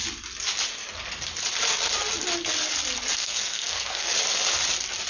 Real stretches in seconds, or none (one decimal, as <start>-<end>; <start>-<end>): 0.0-3.2; 4.1-5.1